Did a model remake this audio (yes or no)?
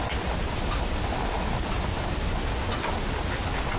no